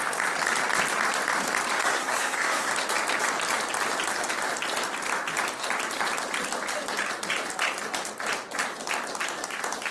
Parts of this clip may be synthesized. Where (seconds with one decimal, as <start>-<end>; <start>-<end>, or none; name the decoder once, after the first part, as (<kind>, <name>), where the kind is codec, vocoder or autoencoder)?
1.8-2.7 (codec, SNAC)

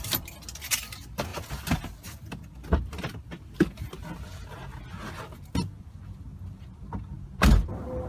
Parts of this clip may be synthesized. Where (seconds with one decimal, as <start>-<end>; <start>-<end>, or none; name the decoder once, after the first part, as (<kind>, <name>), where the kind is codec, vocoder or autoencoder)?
none

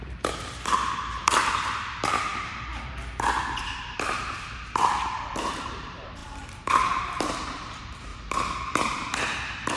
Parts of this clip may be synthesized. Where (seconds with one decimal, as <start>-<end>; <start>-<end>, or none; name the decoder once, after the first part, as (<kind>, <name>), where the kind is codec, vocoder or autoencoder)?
0.0-8.1 (vocoder, BigVGAN v2); 8.8-9.8

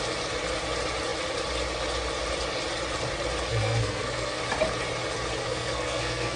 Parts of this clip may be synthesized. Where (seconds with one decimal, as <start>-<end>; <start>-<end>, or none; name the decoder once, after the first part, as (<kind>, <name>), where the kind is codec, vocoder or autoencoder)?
3.5-4.4 (codec, SNAC); 5.4-6.4

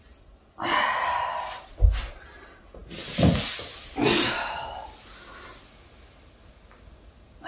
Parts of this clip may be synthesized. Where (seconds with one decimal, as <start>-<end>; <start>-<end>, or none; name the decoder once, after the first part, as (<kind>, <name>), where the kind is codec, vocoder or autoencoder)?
none

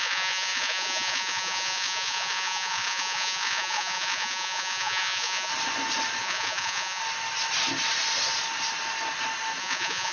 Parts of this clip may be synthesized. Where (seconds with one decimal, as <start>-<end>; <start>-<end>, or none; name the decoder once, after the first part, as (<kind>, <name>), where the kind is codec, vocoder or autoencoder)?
0.0-5.5 (vocoder, Vocos); 6.2-7.0; 9.6-10.1

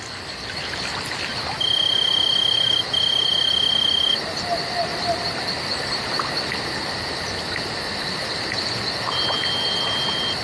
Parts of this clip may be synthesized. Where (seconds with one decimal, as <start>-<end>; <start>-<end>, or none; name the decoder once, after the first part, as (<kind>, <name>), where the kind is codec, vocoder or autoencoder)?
none

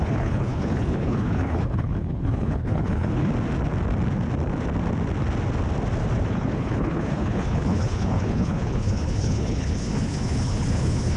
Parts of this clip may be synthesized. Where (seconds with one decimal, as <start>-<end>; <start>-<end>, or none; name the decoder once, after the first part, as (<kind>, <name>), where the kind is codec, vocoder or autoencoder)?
0.0-3.3 (codec, HILCodec); 6.3-11.2